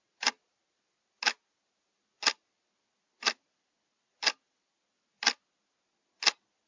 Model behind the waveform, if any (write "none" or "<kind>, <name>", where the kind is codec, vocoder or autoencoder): none